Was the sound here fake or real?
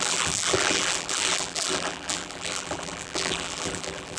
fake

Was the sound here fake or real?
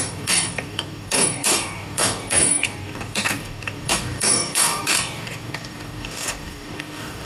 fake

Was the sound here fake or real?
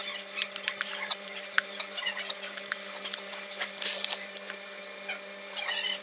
fake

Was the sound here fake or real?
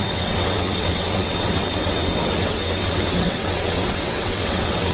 fake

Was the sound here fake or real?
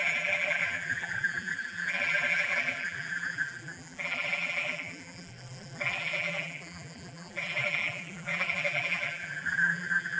fake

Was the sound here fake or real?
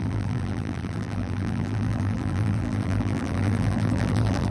fake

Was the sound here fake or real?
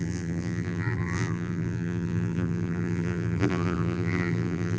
fake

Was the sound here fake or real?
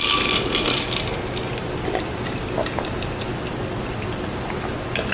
real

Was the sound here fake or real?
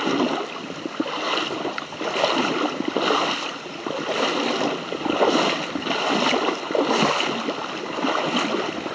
real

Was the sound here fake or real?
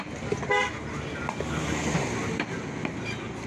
real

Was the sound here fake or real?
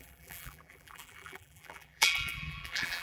fake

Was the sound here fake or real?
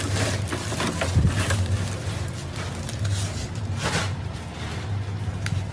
real